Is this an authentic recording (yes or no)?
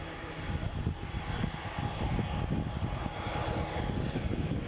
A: yes